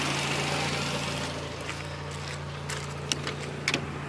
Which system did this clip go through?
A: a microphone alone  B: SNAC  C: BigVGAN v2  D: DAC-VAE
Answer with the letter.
A